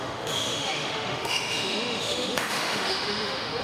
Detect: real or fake fake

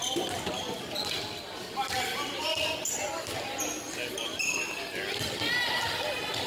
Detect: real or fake real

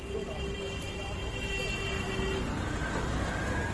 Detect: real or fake real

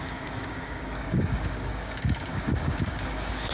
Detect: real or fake fake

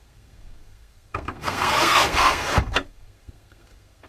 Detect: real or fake fake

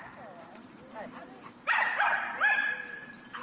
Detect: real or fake fake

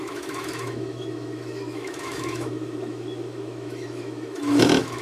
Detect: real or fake fake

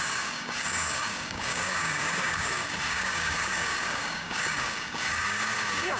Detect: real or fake fake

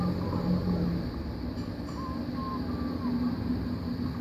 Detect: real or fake real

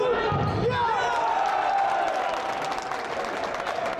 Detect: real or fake real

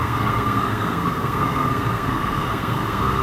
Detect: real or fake fake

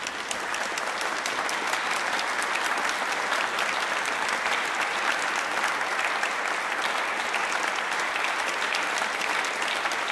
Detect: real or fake real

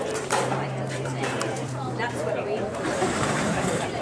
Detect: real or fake fake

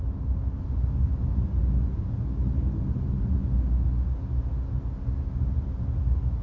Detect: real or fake real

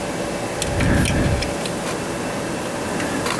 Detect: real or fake real